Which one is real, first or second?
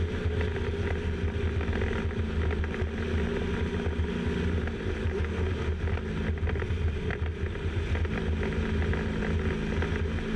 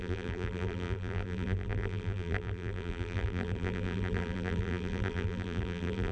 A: first